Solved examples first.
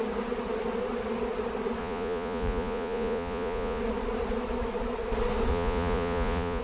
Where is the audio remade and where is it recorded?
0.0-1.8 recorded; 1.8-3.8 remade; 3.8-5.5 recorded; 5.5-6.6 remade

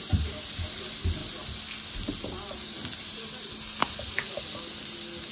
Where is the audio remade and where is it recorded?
0.0-5.3 recorded

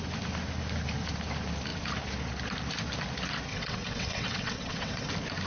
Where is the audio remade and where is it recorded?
0.0-3.5 recorded; 3.5-5.1 remade; 5.1-5.5 recorded